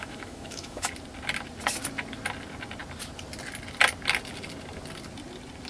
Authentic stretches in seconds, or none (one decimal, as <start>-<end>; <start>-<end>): 0.9-5.7